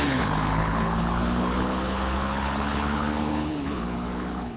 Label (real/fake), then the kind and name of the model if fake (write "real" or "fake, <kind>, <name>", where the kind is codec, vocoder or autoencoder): fake, codec, HILCodec